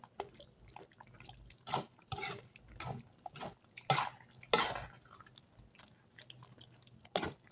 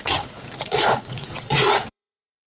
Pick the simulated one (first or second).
second